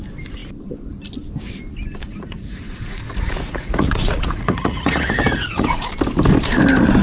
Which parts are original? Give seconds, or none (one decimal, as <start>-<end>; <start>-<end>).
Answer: 0.0-2.0; 5.9-7.0